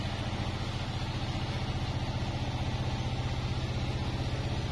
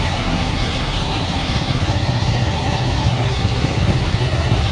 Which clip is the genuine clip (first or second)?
first